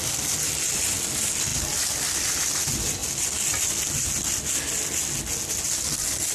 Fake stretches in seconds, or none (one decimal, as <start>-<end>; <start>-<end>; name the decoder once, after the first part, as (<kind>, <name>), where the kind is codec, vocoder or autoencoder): 3.0-3.7 (vocoder, BigVGAN v2)